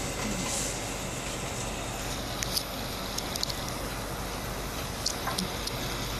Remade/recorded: recorded